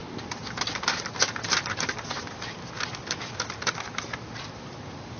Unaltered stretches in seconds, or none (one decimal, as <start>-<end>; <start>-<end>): 0.0-0.7